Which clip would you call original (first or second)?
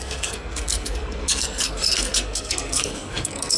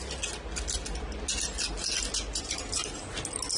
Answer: second